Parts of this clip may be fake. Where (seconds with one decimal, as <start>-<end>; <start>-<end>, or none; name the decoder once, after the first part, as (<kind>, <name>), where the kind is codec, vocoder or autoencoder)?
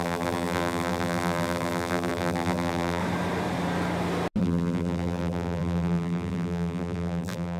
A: 0.0-3.0 (vocoder, BigVGAN v2); 4.4-7.6